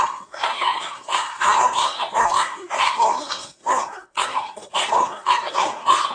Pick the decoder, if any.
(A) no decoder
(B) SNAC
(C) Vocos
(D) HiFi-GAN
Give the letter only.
B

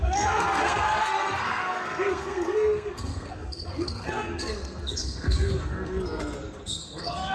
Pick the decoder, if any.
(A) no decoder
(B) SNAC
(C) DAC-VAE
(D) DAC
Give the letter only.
B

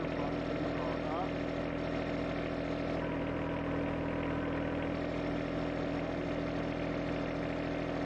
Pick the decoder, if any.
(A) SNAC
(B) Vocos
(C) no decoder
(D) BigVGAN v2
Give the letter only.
C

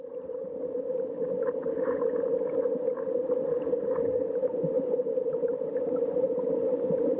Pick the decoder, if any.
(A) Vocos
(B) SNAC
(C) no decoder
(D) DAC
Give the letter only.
C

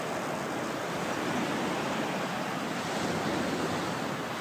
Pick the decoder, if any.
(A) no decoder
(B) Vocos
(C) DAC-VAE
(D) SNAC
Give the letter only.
A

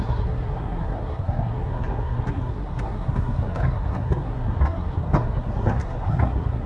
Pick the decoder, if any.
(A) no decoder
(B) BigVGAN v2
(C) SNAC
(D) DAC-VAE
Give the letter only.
C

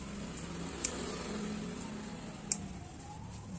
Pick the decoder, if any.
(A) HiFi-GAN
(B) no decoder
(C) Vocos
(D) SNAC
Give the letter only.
B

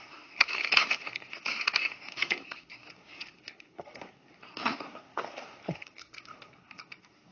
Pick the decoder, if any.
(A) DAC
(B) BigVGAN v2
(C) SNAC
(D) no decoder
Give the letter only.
C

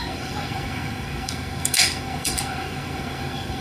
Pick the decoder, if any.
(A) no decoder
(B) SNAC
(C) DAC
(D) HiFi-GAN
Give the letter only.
B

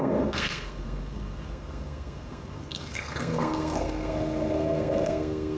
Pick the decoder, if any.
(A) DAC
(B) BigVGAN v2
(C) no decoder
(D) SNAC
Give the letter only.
D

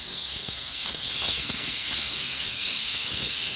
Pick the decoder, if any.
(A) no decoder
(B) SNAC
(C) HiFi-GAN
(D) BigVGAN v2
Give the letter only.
B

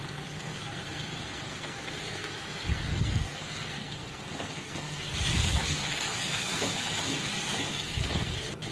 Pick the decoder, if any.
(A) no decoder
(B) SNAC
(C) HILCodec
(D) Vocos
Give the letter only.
B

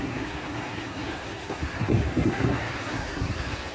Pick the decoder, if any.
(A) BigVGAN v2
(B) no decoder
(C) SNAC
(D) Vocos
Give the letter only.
C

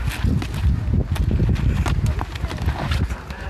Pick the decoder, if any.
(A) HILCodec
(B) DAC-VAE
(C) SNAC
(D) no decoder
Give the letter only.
D